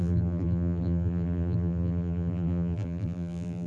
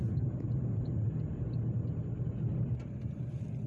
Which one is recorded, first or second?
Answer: second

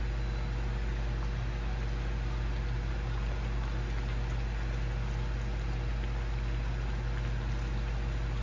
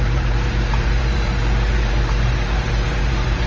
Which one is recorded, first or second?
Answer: first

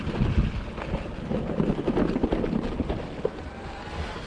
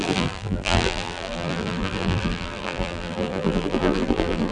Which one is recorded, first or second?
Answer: first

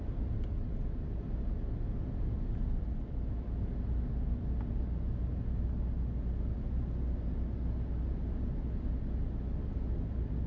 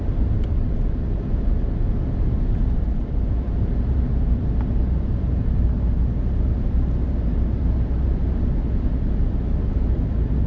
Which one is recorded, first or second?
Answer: first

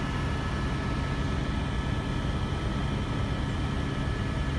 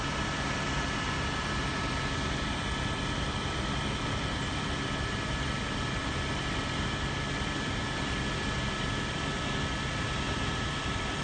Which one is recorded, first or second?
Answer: first